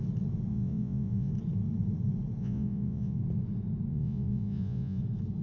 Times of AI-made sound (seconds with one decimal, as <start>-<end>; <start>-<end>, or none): 0.5-1.3; 2.4-3.2; 3.9-5.0